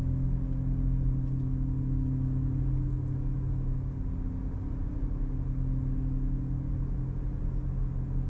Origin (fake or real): real